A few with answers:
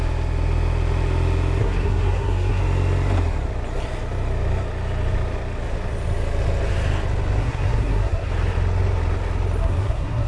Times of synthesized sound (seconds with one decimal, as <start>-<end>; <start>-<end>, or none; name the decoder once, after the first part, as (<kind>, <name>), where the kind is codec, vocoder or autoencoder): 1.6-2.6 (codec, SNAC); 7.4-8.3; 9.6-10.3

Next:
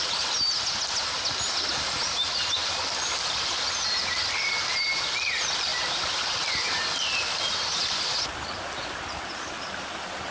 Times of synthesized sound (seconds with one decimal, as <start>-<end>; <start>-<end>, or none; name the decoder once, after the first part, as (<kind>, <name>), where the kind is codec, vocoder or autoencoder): none

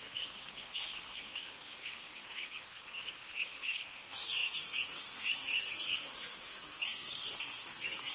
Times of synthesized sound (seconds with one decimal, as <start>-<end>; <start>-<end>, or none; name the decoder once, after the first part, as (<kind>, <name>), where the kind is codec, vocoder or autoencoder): 0.0-8.1 (codec, SNAC)